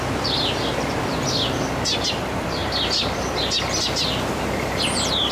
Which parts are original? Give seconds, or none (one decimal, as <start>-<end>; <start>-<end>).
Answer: 0.0-5.3